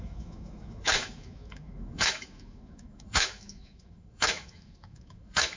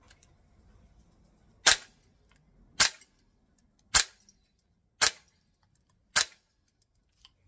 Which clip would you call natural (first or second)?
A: second